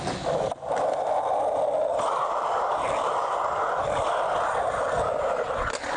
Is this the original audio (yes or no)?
yes